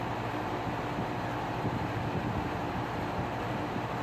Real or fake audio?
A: fake